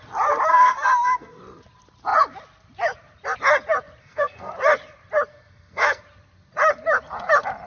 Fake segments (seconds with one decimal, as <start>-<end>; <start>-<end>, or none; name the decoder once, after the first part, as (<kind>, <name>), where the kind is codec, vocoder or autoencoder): 0.5-1.4 (codec, SNAC); 4.0-4.5; 5.3-6.0